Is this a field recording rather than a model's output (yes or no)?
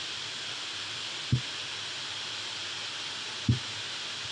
yes